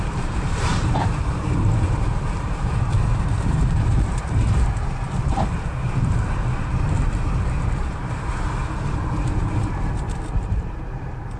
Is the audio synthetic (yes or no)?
yes